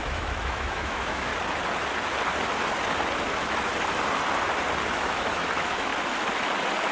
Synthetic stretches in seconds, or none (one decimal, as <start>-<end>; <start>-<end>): 0.0-1.3; 4.9-5.9

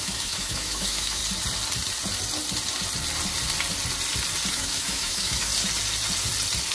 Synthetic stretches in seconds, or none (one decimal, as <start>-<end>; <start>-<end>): 0.0-1.2; 4.5-5.5

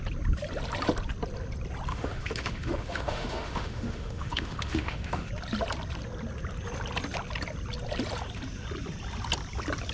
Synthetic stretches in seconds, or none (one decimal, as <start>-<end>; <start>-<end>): 1.9-5.3